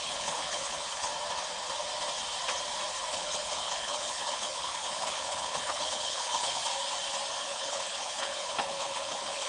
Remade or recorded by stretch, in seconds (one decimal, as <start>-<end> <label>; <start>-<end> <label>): 0.0-1.1 remade; 1.1-3.1 recorded; 3.1-6.6 remade; 6.6-7.4 recorded; 7.4-9.5 remade